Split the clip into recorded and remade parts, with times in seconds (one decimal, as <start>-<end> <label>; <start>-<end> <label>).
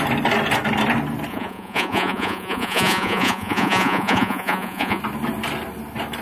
0.0-1.3 recorded; 1.3-5.0 remade; 5.0-6.2 recorded